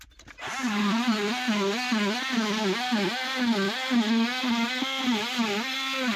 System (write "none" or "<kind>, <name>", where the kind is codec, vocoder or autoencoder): none